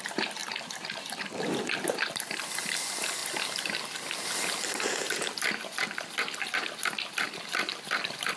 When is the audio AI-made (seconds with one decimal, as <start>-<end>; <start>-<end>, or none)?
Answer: 0.4-1.3